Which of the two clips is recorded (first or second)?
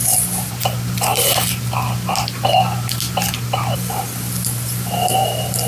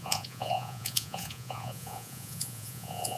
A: first